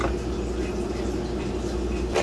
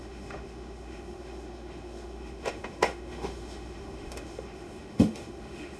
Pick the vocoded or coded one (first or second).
second